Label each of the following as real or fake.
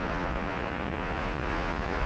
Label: fake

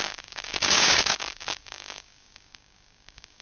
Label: fake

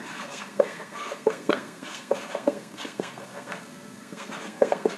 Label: fake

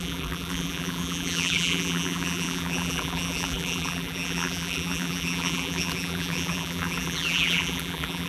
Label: fake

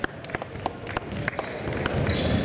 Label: real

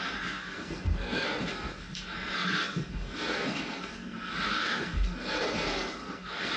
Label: fake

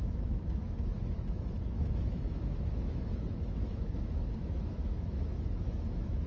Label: fake